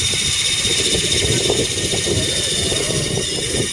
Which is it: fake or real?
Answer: fake